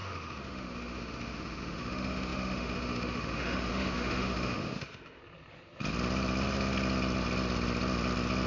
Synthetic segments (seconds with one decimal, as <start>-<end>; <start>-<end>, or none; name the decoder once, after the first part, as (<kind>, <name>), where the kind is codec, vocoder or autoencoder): 0.0-5.2 (autoencoder, DAC-VAE)